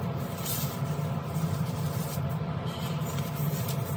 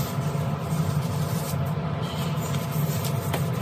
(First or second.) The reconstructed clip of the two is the first